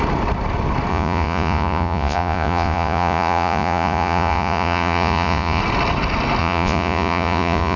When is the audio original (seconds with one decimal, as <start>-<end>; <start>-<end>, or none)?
0.0-0.9; 5.6-6.4